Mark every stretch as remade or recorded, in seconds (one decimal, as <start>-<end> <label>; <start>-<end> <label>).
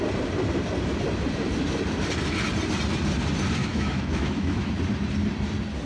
0.0-3.6 recorded; 3.6-4.7 remade; 4.7-5.9 recorded